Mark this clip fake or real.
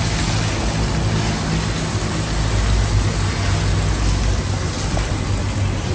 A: real